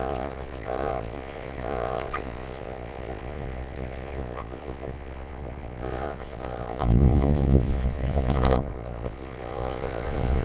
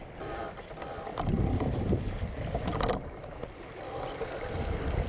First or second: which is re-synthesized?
first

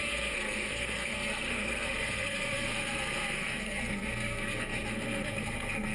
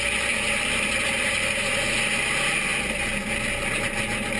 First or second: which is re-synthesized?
first